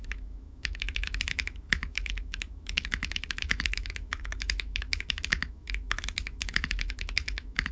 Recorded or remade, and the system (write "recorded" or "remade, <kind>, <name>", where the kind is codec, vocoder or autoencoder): remade, autoencoder, DAC-VAE